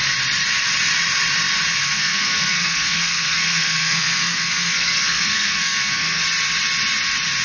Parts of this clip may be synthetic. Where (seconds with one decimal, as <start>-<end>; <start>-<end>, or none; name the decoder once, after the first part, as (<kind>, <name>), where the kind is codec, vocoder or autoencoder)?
1.8-6.2 (codec, SNAC)